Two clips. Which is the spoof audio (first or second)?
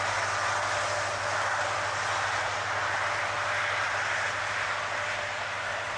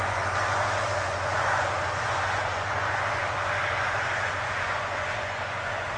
second